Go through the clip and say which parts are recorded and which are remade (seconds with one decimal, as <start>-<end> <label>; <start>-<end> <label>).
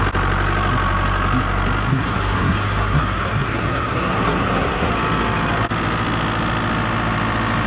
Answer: 0.0-1.9 recorded; 1.9-4.9 remade; 4.9-7.7 recorded